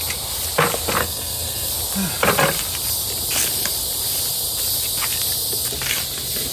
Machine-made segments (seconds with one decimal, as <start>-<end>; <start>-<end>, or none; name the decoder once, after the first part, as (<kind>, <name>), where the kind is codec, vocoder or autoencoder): 1.0-1.7 (codec, SNAC)